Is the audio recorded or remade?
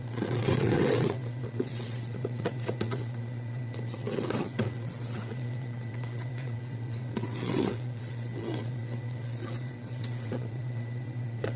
remade